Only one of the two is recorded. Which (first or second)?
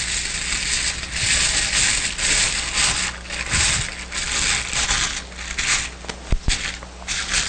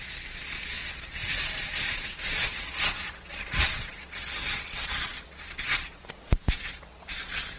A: first